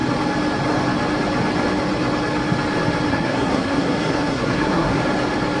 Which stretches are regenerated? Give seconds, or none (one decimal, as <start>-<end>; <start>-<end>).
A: 3.1-5.0